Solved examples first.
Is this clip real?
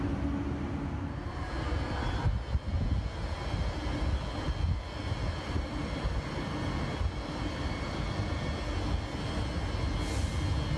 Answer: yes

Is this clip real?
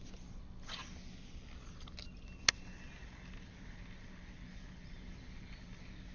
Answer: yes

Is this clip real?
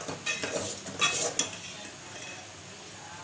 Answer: yes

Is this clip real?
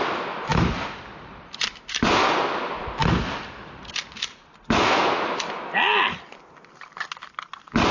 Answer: yes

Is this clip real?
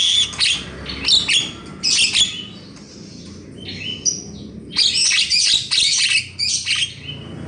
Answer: yes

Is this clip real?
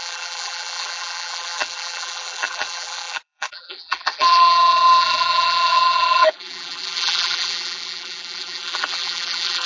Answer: no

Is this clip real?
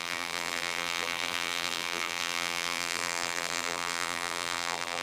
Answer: no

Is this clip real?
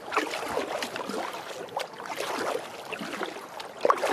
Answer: yes